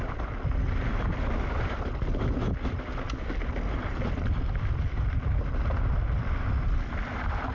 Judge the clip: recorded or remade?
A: recorded